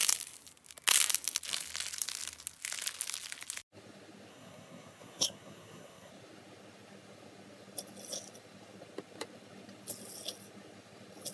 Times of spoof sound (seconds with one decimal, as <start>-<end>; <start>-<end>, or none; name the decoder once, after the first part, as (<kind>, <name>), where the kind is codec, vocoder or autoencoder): 4.3-6.1 (codec, SNAC)